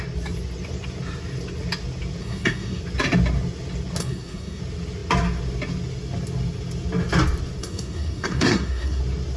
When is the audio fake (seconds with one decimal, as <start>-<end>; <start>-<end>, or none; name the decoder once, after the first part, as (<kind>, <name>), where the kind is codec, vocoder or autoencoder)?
2.2-2.8 (codec, SNAC); 4.0-4.6; 7.6-9.0